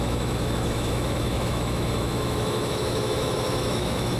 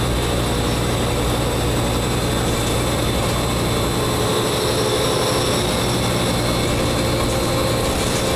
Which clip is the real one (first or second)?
second